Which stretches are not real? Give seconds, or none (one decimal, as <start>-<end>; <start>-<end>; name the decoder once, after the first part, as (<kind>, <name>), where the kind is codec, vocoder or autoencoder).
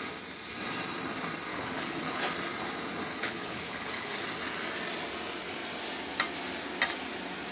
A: 1.5-2.2 (codec, HILCodec); 3.1-4.2